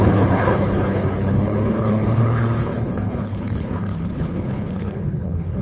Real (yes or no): no